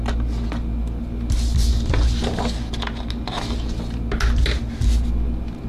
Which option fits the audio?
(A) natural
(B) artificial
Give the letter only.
A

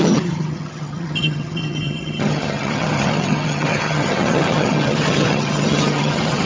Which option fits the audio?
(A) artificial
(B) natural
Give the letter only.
A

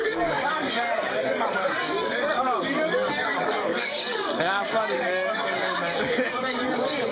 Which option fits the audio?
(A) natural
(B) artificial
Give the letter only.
B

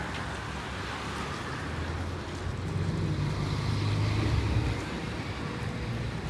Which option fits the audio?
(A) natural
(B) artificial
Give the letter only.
A